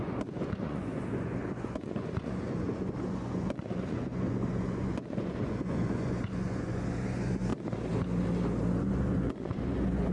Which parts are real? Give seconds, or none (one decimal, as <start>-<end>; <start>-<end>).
7.5-8.8